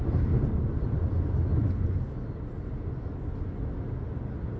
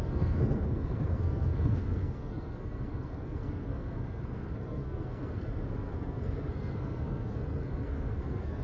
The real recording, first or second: first